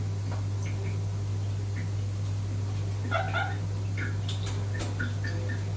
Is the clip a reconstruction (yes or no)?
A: no